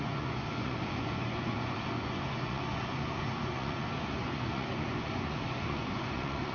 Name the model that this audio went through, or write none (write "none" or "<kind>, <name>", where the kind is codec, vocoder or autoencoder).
vocoder, Vocos